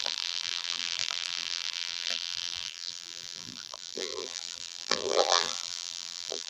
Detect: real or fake fake